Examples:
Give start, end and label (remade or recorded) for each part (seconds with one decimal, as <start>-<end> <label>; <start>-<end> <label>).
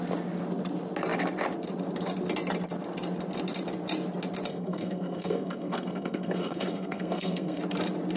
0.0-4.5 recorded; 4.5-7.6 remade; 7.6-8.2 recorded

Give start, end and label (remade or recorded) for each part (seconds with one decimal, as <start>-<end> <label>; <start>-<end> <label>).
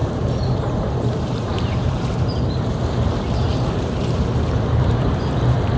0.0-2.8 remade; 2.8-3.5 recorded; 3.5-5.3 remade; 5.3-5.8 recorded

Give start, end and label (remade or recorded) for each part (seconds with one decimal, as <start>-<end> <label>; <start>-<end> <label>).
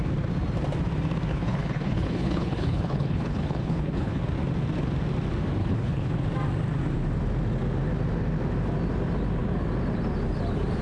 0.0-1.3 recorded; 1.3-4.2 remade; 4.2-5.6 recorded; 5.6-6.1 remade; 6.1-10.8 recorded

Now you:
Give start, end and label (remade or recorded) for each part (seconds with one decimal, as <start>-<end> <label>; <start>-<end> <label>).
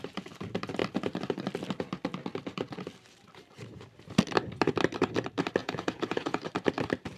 0.0-5.6 recorded; 5.6-6.4 remade; 6.4-7.2 recorded